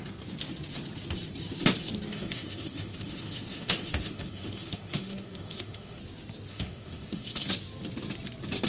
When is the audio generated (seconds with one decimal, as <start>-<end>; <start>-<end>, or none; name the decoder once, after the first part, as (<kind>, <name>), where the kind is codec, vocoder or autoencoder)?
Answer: 2.1-6.0 (autoencoder, DAC-VAE); 6.5-7.5